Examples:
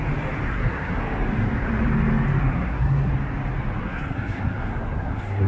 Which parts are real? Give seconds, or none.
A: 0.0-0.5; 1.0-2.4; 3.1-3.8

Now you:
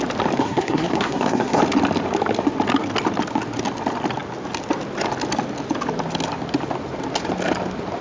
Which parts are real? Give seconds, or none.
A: 0.0-0.4; 1.6-8.0

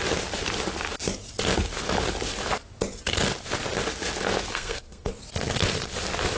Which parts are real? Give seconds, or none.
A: 0.0-4.5; 5.1-6.4